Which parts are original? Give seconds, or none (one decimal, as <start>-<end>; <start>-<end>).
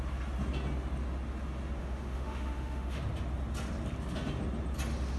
0.0-1.8; 3.0-5.2